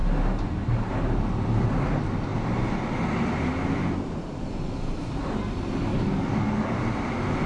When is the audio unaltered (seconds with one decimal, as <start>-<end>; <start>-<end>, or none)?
0.0-5.9; 6.8-7.5